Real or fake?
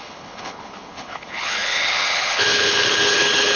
fake